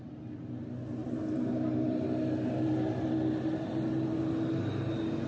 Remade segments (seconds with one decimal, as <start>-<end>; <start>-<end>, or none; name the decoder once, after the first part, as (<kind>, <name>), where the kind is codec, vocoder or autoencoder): none